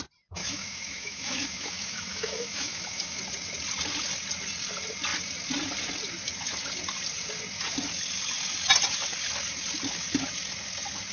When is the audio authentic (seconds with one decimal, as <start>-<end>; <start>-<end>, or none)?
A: 0.0-0.4; 3.2-11.1